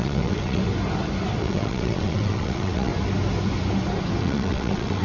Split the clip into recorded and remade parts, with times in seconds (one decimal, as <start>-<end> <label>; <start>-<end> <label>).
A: 0.0-0.6 remade; 0.6-1.4 recorded; 1.4-2.9 remade; 2.9-4.2 recorded; 4.2-5.0 remade